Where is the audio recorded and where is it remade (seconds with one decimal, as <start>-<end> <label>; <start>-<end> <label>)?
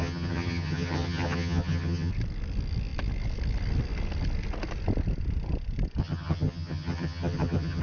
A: 0.0-2.1 remade; 2.1-6.0 recorded; 6.0-7.8 remade